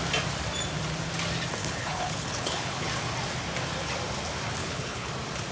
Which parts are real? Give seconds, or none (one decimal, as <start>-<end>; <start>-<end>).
0.0-1.6; 2.9-4.6; 5.1-5.5